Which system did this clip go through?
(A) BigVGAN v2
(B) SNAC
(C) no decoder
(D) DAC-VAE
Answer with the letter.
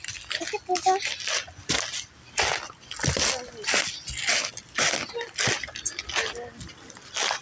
C